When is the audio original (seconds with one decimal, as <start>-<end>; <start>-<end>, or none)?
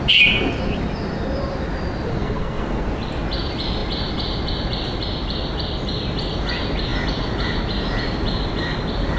0.0-2.1; 2.9-9.2